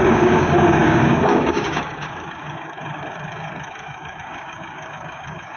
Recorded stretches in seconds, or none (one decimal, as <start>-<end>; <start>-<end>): none